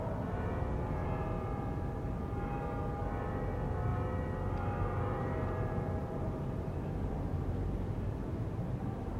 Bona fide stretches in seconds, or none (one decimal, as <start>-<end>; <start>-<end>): 0.0-3.9